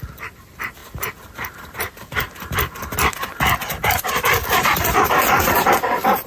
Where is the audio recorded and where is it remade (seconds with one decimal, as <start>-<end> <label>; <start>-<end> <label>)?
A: 0.0-4.4 recorded; 4.4-5.7 remade; 5.7-6.3 recorded